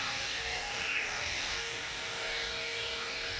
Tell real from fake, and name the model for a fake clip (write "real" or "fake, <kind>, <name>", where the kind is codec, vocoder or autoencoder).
fake, codec, DAC